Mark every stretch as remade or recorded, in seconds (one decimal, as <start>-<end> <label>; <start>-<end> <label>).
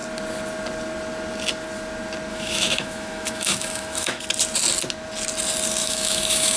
0.0-2.3 recorded; 2.3-4.2 remade; 4.2-5.8 recorded; 5.8-6.6 remade